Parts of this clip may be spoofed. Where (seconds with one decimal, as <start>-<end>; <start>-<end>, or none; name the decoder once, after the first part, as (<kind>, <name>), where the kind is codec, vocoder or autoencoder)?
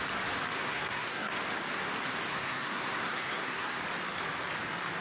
0.6-1.3 (codec, SNAC); 2.3-3.8